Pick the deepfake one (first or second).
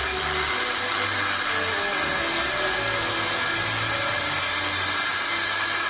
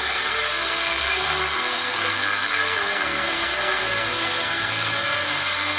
second